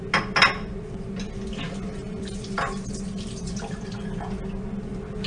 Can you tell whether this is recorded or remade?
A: recorded